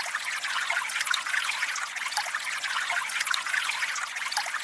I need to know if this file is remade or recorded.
remade